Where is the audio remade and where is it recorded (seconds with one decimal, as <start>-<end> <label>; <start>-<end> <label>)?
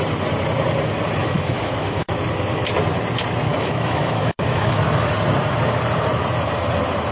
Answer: 0.0-1.2 recorded; 1.2-2.1 remade; 2.1-3.5 recorded; 3.5-4.8 remade; 4.8-7.1 recorded